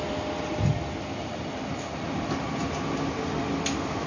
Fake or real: real